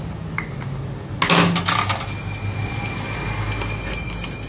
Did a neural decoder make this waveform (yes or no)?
no